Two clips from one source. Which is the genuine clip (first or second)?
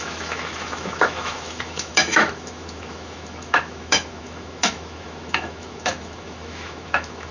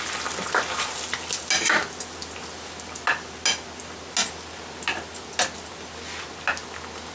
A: second